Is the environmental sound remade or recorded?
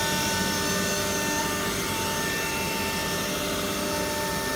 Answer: recorded